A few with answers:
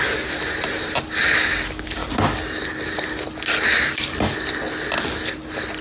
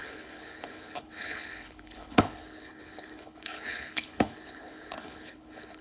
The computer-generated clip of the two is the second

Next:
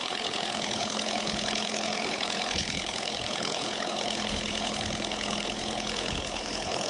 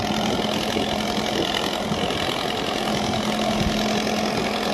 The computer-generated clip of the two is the first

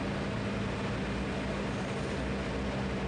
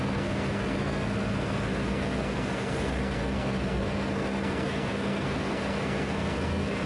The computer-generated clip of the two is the second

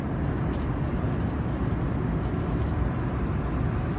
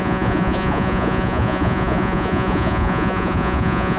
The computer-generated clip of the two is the second